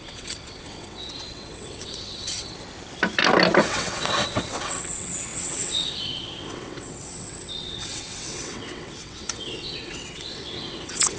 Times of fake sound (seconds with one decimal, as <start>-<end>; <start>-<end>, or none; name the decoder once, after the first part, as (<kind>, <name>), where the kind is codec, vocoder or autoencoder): 0.0-2.5 (vocoder, WaveNeXt); 3.6-11.2